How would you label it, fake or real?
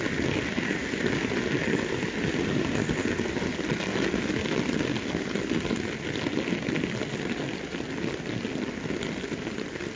real